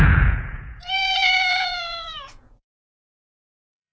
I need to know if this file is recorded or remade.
remade